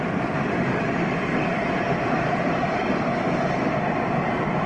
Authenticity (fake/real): fake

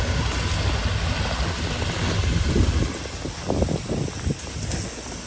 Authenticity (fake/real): real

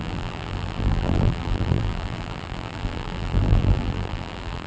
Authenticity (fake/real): fake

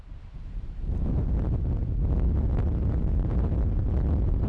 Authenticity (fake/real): fake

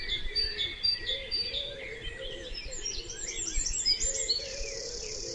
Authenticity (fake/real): fake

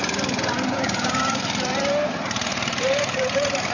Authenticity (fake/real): fake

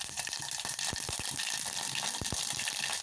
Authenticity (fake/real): fake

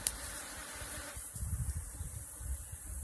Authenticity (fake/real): fake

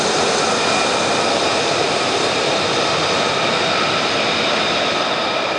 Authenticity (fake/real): real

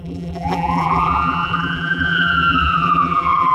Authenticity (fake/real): fake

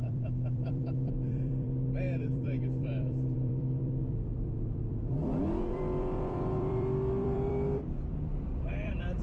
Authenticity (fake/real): fake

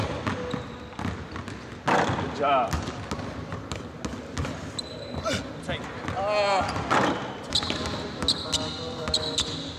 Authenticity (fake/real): real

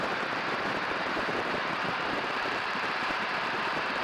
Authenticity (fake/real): fake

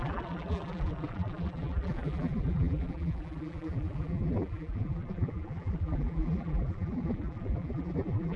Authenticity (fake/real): fake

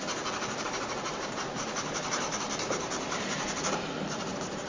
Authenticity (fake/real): fake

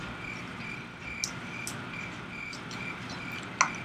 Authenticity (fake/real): real